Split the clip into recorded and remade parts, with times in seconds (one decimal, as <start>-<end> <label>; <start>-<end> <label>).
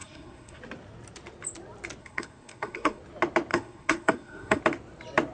0.0-0.6 remade; 0.6-2.0 recorded; 2.0-3.0 remade; 3.0-3.5 recorded; 3.5-4.6 remade; 4.6-5.3 recorded